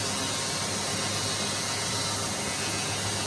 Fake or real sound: real